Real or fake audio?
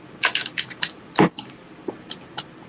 real